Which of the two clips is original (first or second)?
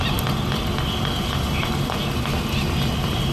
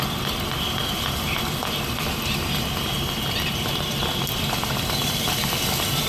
first